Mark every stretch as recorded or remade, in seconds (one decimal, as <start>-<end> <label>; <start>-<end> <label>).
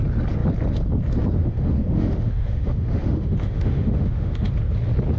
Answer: 0.0-1.4 recorded; 1.4-4.5 remade; 4.5-5.2 recorded